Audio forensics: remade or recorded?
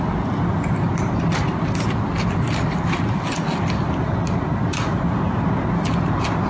recorded